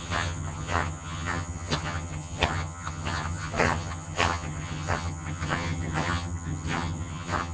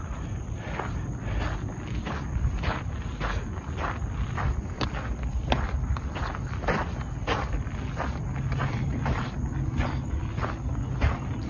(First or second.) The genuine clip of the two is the second